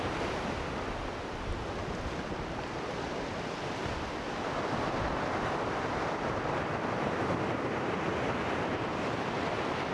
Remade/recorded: recorded